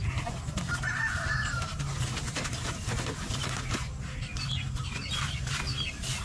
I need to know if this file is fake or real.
real